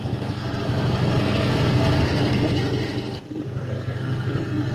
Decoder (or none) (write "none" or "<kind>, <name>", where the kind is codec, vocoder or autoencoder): codec, SNAC